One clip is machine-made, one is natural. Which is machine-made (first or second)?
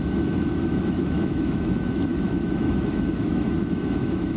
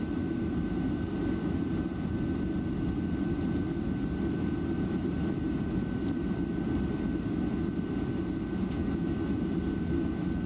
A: first